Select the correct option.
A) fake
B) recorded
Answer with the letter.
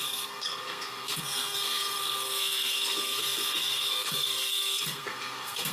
A